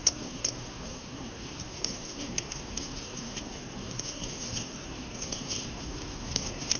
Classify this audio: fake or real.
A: fake